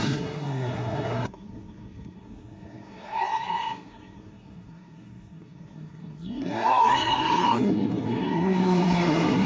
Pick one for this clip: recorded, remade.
remade